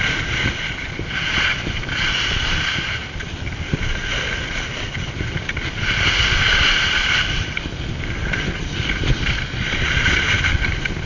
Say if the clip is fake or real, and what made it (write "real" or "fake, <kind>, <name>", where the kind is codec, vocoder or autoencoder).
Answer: real